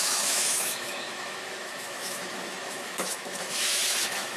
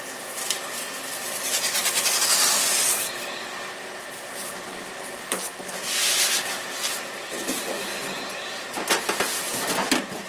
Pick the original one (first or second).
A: second